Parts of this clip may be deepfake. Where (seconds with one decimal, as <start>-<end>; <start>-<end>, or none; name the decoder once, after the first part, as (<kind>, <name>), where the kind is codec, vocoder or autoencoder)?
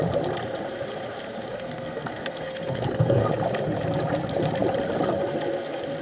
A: 1.5-3.3 (codec, SNAC)